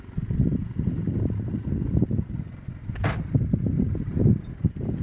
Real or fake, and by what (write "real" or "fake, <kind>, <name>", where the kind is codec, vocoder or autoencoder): real